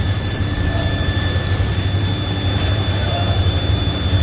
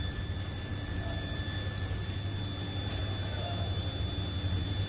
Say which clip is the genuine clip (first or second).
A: second